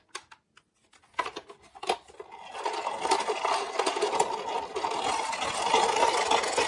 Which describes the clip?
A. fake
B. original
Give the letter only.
B